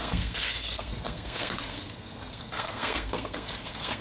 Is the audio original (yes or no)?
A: no